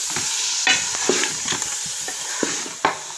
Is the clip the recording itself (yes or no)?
yes